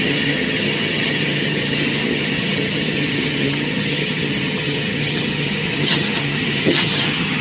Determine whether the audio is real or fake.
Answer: fake